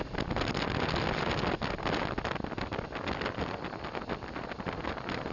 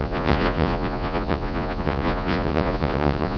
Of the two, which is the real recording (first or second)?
first